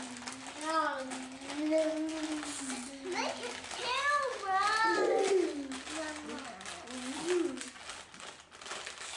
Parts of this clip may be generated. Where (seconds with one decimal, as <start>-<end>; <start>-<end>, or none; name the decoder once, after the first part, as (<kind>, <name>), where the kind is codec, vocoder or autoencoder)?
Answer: none